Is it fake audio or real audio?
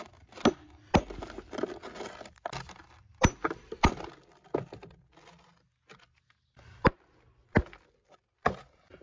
real